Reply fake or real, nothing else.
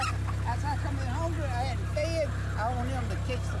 real